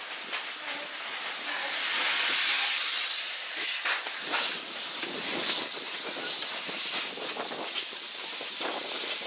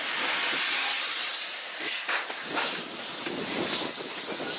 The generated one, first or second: first